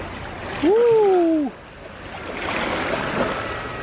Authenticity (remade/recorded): recorded